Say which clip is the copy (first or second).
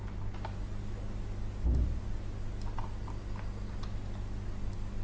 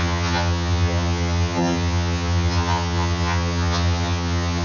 second